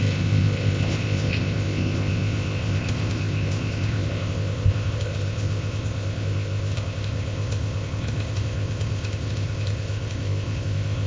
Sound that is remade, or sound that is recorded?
remade